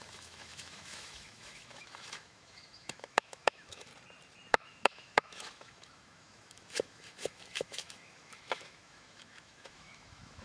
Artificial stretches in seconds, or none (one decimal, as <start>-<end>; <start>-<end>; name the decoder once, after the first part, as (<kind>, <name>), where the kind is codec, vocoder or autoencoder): 0.0-3.9 (autoencoder, DAC-VAE); 4.5-10.4